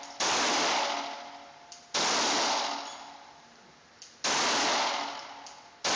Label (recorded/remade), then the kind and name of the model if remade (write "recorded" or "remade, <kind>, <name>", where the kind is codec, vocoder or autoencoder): recorded